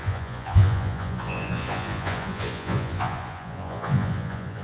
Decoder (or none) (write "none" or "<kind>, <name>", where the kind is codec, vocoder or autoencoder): vocoder, Vocos